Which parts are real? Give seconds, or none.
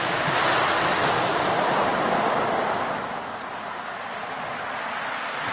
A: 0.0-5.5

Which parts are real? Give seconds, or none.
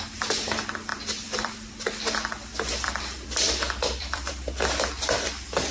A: 0.0-0.9; 4.3-5.7